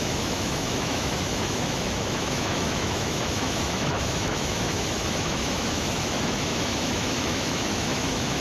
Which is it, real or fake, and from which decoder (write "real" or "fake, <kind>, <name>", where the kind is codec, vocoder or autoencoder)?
fake, autoencoder, DAC-VAE